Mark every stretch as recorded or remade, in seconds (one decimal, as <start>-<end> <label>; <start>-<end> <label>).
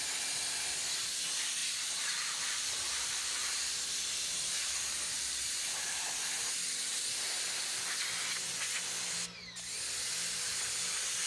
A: 0.0-1.6 recorded; 1.6-6.1 remade; 6.1-11.3 recorded